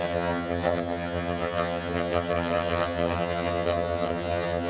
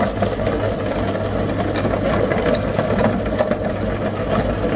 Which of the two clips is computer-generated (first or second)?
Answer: first